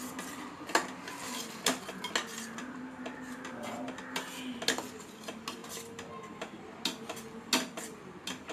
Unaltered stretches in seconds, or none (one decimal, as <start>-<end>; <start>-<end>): 0.0-8.5